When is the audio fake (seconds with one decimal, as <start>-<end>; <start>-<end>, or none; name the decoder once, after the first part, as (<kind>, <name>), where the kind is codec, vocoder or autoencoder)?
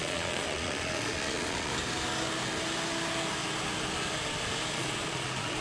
0.0-1.7 (vocoder, Vocos); 4.7-5.6